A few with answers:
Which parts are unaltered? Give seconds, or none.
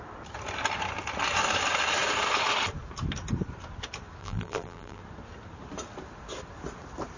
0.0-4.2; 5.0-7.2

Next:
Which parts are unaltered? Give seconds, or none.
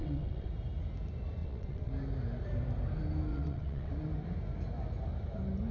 0.5-1.4; 1.9-3.3; 3.9-5.7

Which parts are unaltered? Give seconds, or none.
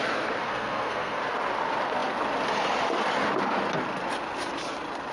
0.0-0.4; 1.2-5.1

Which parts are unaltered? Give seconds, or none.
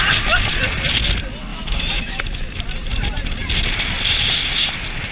0.0-1.5; 2.6-5.1